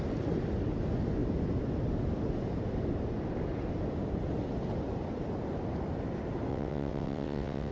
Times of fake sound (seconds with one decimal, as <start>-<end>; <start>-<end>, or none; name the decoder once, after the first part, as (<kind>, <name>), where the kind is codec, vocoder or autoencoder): 6.5-7.7 (vocoder, WaveNeXt)